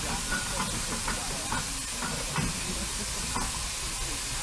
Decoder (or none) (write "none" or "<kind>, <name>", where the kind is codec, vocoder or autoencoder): none